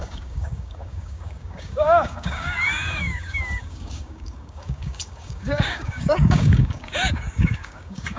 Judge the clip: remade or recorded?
remade